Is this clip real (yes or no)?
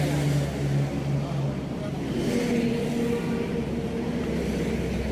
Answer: yes